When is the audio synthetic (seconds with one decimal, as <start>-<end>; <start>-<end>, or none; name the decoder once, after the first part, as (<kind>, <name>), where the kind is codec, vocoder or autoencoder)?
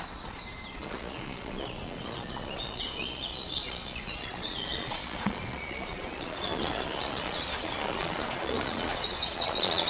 0.0-9.9 (vocoder, Vocos)